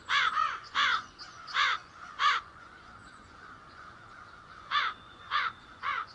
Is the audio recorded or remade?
remade